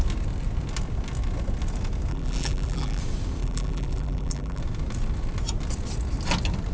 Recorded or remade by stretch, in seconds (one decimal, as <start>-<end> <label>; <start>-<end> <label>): 0.0-2.1 recorded; 2.1-3.0 remade; 3.0-3.4 recorded; 3.4-4.6 remade; 4.6-6.7 recorded